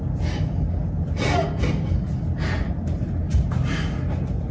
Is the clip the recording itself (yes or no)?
yes